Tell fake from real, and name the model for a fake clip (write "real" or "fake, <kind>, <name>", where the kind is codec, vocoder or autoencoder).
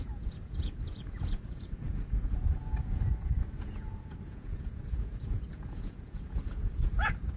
fake, vocoder, Vocos